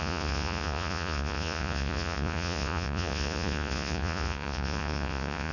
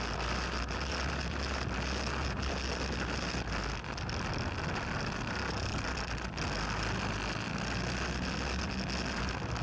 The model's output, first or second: first